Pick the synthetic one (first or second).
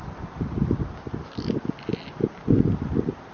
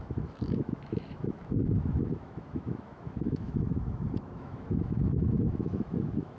second